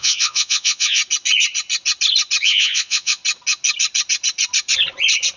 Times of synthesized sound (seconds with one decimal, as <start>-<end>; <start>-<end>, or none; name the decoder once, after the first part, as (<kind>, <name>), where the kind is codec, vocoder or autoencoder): 0.0-1.0 (vocoder, Vocos); 2.4-3.2